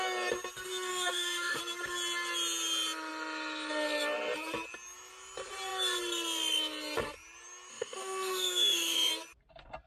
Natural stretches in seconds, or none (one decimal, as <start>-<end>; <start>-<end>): 0.0-0.9; 1.6-7.7; 9.1-9.9